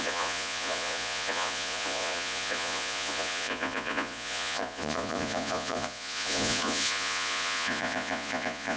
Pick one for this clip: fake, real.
fake